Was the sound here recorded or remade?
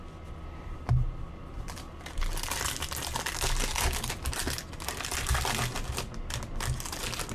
recorded